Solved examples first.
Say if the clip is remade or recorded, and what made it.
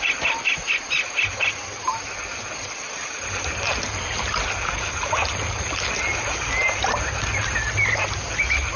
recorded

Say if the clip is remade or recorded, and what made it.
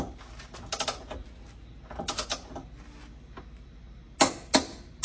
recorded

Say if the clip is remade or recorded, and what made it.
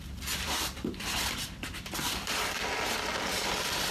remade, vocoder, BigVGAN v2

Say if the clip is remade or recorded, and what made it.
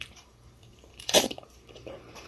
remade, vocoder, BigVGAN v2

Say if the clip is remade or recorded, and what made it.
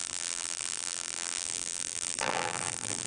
remade, vocoder, BigVGAN v2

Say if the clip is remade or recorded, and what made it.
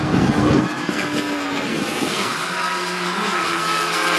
remade, codec, SNAC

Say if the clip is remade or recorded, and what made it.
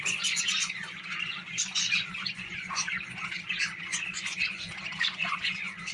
remade, vocoder, Vocos